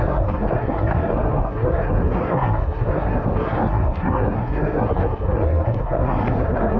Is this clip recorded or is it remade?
remade